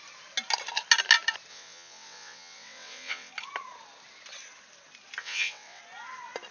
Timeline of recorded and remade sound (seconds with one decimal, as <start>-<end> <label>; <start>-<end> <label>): 0.0-1.5 recorded; 1.5-3.3 remade; 3.3-5.2 recorded; 5.2-5.8 remade; 5.8-6.5 recorded